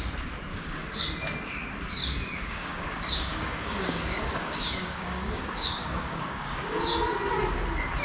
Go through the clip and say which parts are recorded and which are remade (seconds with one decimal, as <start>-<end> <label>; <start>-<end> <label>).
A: 0.0-0.5 recorded; 0.5-1.0 remade; 1.0-2.0 recorded; 2.0-6.8 remade; 6.8-8.0 recorded

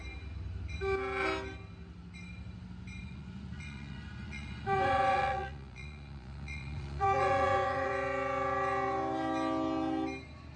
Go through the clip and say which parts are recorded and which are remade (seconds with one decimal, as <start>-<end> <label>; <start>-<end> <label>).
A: 0.0-3.0 recorded; 3.0-7.9 remade; 7.9-10.6 recorded

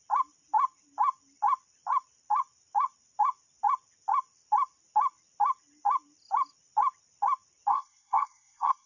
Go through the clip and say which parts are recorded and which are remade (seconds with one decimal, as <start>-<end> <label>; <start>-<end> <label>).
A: 0.0-7.7 recorded; 7.7-8.9 remade

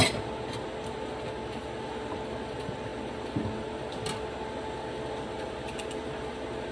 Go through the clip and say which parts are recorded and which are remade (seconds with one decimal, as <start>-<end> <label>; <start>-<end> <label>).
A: 0.0-6.7 recorded

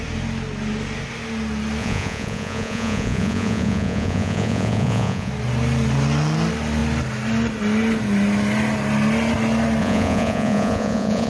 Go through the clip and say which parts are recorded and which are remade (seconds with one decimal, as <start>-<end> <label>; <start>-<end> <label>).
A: 0.0-1.8 recorded; 1.8-5.3 remade; 5.3-9.8 recorded; 9.8-11.3 remade

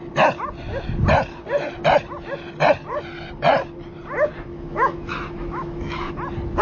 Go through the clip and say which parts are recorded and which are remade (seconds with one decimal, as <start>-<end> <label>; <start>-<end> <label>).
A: 0.0-4.5 recorded; 4.5-6.1 remade; 6.1-6.6 recorded